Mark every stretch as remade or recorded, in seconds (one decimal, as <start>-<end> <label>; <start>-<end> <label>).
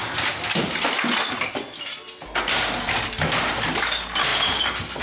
0.0-5.0 recorded